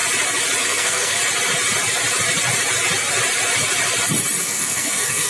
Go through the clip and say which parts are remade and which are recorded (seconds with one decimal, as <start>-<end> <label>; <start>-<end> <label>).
0.0-0.6 recorded; 0.6-1.2 remade; 1.2-4.4 recorded; 4.4-5.3 remade